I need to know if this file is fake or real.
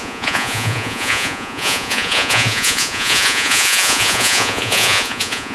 fake